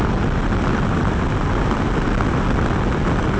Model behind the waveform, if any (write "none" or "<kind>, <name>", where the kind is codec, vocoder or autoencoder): none